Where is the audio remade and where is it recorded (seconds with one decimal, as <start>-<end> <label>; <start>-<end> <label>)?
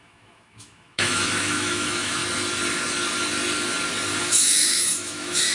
0.0-2.2 remade; 2.2-4.2 recorded; 4.2-5.5 remade